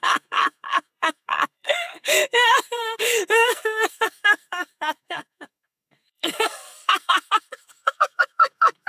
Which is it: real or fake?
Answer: fake